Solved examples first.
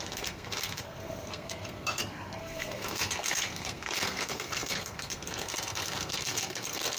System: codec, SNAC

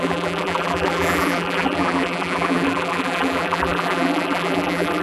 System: vocoder, BigVGAN v2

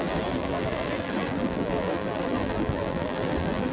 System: vocoder, BigVGAN v2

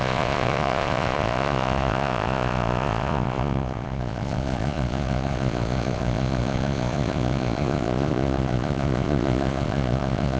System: vocoder, Vocos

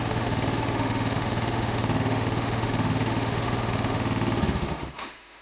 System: autoencoder, DAC-VAE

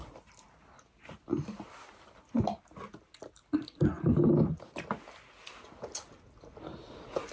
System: none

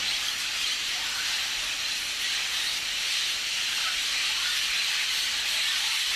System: none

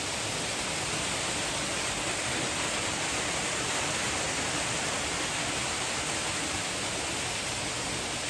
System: vocoder, BigVGAN v2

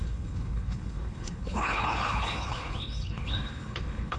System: codec, HILCodec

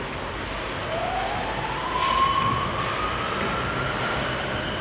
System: none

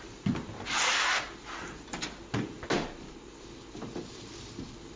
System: none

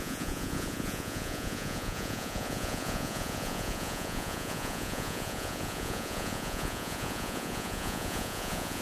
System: vocoder, Vocos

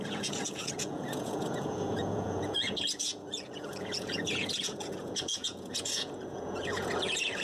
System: vocoder, Vocos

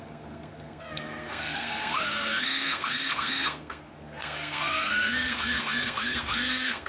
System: codec, SNAC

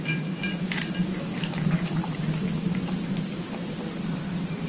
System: none